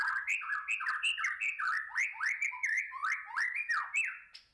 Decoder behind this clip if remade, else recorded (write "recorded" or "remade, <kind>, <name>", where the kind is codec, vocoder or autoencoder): recorded